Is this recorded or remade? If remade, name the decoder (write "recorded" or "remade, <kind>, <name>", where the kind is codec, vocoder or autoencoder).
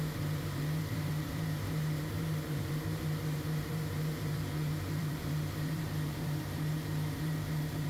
remade, vocoder, BigVGAN v2